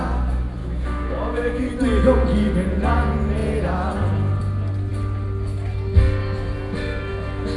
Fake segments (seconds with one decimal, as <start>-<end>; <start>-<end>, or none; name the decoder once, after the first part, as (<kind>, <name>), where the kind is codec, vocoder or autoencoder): 0.6-1.7 (autoencoder, DAC-VAE)